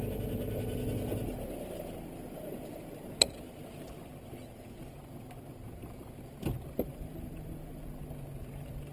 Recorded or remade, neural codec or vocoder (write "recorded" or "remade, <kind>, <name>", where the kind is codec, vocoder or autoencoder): recorded